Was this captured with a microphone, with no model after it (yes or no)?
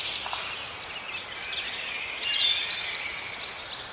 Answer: yes